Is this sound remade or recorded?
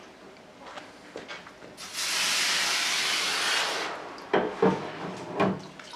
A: recorded